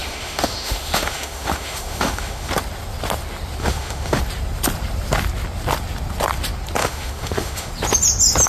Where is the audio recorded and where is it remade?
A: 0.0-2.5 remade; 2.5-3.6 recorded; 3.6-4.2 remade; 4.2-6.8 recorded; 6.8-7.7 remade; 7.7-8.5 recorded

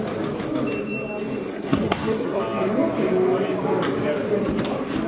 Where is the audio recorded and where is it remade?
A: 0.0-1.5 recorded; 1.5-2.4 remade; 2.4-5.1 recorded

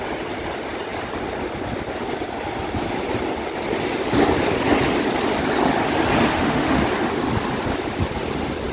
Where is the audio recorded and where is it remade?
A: 0.0-6.3 recorded; 6.3-6.8 remade; 6.8-8.7 recorded